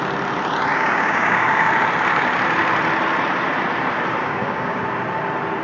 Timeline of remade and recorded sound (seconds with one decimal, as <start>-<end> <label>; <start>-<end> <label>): 0.0-0.7 recorded; 0.7-1.7 remade; 1.7-4.2 recorded; 4.2-4.8 remade; 4.8-5.6 recorded